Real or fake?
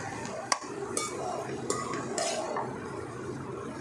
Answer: real